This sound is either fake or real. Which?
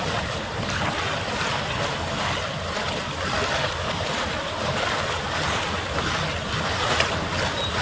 fake